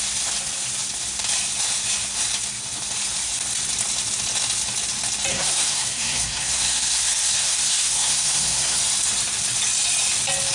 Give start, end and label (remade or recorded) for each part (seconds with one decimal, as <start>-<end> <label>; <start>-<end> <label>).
0.0-5.3 recorded; 5.3-8.8 remade; 8.8-10.5 recorded

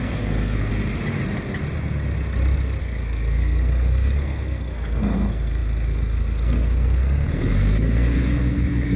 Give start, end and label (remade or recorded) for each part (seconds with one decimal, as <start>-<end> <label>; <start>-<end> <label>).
0.0-0.7 remade; 0.7-2.8 recorded; 2.8-9.0 remade